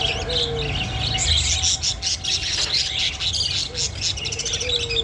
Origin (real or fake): real